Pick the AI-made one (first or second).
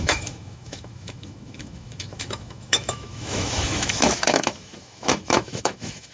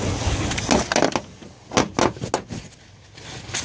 first